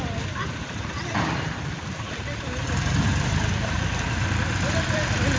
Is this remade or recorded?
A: remade